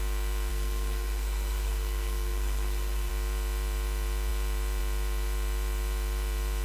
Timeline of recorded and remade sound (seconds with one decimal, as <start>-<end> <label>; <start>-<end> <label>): 0.0-0.5 recorded; 0.5-3.1 remade; 3.1-6.6 recorded